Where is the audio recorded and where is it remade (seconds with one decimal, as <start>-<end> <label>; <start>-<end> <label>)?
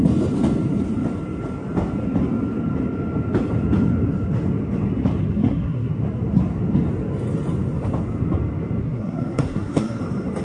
0.0-5.2 recorded; 5.2-5.9 remade; 5.9-8.8 recorded; 8.8-10.0 remade; 10.0-10.4 recorded